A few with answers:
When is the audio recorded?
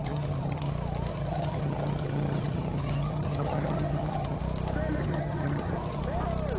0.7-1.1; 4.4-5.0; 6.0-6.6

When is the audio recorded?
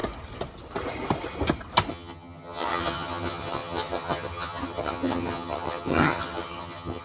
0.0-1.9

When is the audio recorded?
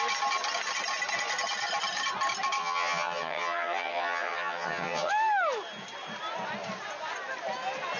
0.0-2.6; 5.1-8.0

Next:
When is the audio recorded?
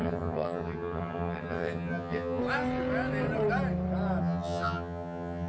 2.4-4.2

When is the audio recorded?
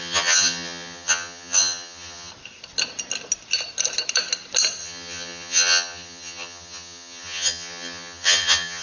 2.3-4.8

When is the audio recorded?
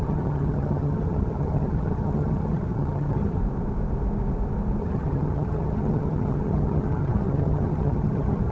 3.4-4.8